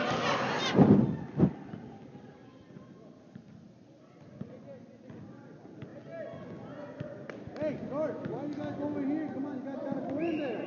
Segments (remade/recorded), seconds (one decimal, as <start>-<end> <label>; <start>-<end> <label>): 0.0-10.7 recorded